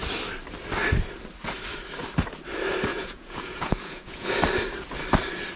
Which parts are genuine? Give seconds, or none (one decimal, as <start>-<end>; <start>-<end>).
0.0-2.9; 4.3-5.6